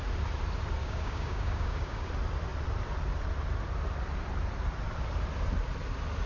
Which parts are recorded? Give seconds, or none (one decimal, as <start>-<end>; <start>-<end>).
0.0-0.8; 2.1-6.3